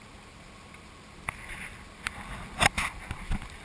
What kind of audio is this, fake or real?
real